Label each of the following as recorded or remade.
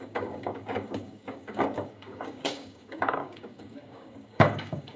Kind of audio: remade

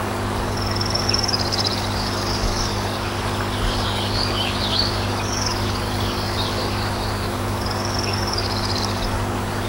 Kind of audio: remade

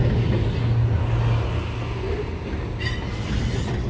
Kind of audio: recorded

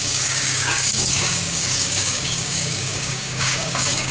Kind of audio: remade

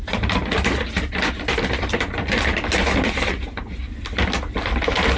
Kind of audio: recorded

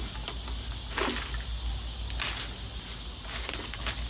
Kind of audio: recorded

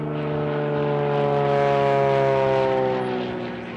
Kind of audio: recorded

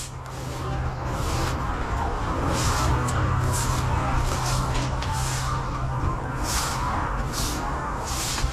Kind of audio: remade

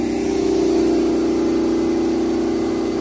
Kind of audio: recorded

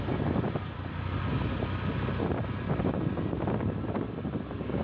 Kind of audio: recorded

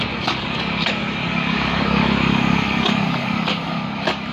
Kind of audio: remade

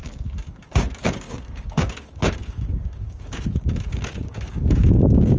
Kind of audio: remade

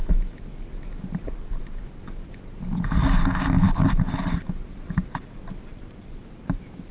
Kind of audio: recorded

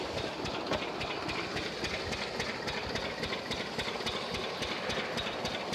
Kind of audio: recorded